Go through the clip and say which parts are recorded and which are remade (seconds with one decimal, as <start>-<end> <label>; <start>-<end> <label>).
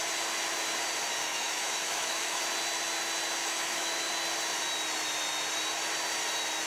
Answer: 0.0-1.3 recorded; 1.3-2.4 remade; 2.4-3.4 recorded; 3.4-4.1 remade; 4.1-6.7 recorded